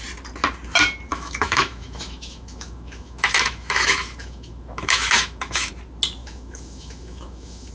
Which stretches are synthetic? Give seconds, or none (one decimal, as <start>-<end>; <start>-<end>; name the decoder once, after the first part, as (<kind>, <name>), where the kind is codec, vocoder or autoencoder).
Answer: 1.1-5.7 (autoencoder, DAC-VAE); 6.2-7.7